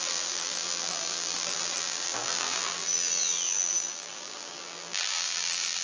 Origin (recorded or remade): remade